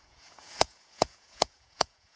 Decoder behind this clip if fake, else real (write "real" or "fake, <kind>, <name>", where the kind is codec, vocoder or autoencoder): fake, vocoder, Vocos